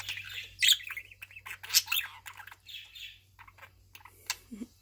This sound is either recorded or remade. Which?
recorded